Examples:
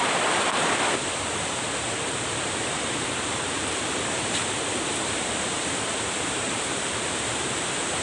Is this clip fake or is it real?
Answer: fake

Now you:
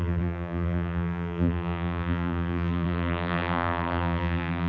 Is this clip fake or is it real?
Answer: fake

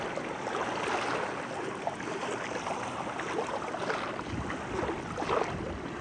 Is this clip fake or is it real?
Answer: real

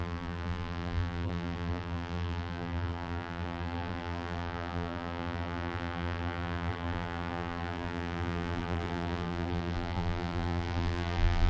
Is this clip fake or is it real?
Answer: fake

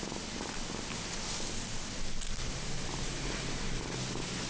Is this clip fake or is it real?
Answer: real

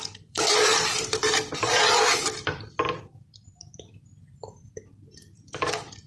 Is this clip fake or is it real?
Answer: fake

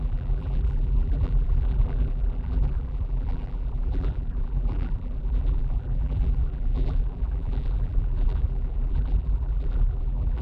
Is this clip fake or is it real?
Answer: fake